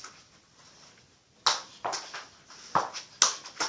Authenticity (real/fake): real